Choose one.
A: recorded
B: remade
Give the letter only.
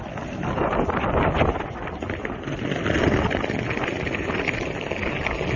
A